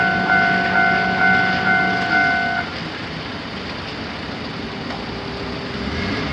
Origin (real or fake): real